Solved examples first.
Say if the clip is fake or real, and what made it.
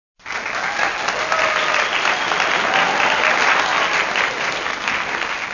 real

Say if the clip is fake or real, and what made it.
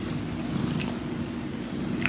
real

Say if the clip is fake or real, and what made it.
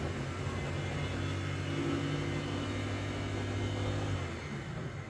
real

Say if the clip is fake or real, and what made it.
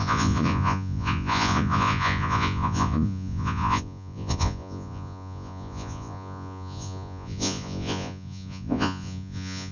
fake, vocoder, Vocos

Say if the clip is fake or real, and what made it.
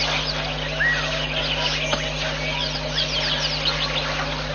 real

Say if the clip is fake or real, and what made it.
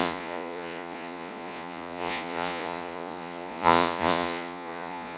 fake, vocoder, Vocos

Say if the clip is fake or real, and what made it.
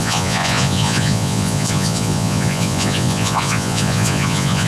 fake, vocoder, Vocos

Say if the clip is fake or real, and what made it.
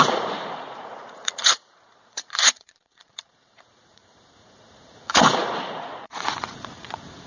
fake, vocoder, Vocos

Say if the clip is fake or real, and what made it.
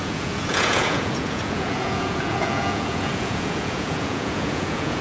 fake, vocoder, Vocos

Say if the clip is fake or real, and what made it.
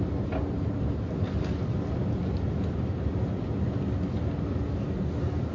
real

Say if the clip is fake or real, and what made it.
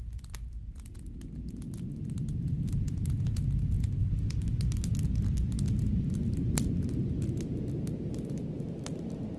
real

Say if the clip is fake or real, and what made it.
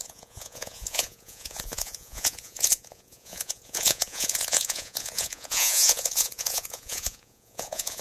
fake, vocoder, Vocos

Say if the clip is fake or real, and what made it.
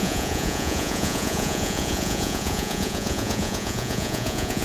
fake, vocoder, Vocos